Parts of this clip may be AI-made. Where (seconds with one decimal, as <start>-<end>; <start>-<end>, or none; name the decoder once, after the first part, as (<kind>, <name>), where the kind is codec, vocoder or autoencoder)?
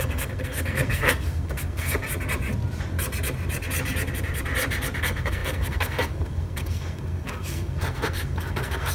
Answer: 0.0-2.0 (codec, SNAC); 5.0-8.9